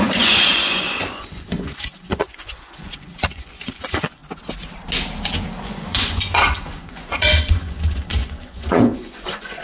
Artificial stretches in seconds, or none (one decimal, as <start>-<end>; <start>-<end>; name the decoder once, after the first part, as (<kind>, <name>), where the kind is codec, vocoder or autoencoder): 0.0-4.2 (vocoder, Vocos); 5.6-9.6